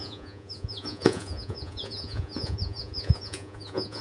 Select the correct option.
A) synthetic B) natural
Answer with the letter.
A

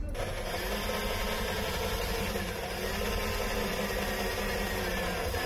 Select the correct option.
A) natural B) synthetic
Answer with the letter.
A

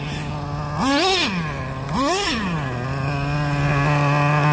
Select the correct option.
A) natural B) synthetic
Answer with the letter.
A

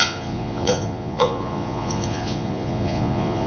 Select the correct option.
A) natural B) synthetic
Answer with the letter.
B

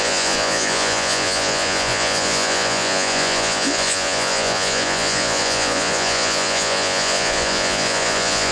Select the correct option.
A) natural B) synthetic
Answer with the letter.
B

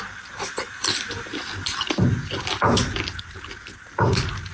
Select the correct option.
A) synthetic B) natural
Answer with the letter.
B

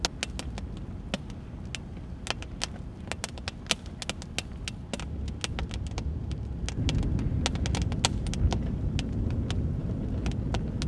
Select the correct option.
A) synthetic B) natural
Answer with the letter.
B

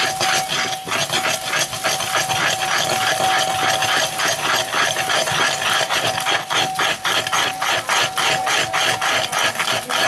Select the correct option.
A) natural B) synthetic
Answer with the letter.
A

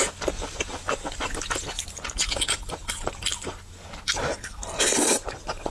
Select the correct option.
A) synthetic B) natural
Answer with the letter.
B